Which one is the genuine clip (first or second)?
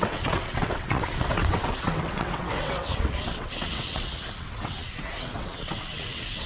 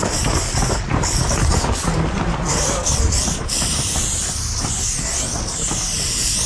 second